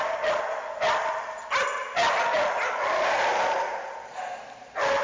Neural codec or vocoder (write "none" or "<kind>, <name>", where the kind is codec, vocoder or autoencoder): none